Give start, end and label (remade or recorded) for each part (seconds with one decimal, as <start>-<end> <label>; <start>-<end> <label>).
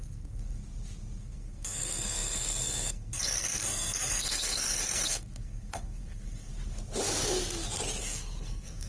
0.0-0.6 remade; 0.6-1.2 recorded; 1.2-6.5 remade; 6.5-8.0 recorded; 8.0-8.9 remade